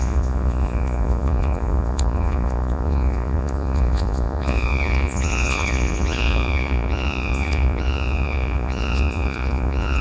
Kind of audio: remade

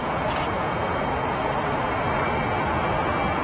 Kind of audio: remade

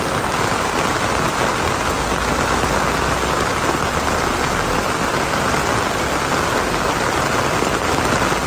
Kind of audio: recorded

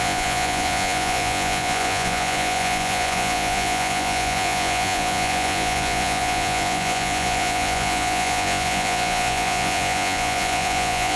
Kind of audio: remade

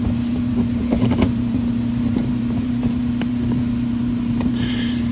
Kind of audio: remade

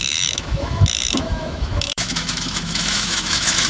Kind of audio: remade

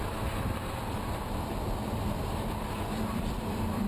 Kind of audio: remade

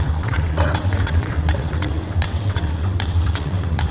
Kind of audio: remade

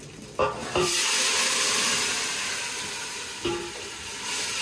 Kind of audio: recorded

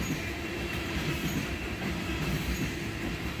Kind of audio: remade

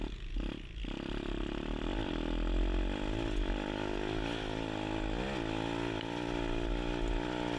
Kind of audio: recorded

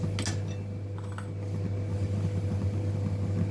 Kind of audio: recorded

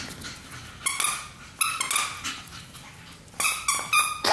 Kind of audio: recorded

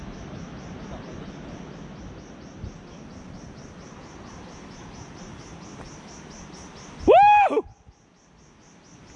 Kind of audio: recorded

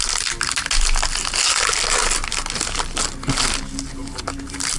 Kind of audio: recorded